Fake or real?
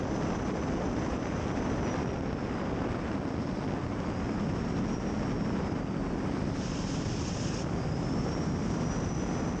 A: real